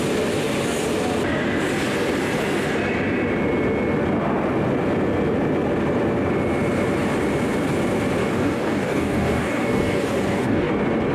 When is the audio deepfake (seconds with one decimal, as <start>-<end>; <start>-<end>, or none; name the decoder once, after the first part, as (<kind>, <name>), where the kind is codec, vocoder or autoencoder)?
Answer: 8.2-10.7 (codec, DAC)